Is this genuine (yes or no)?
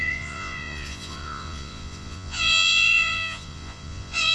no